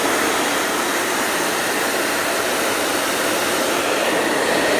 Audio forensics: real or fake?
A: fake